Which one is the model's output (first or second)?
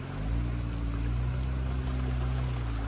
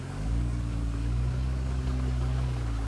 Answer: second